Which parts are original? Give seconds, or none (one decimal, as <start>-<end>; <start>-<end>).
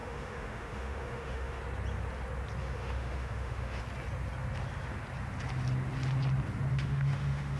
1.6-2.6; 3.8-6.7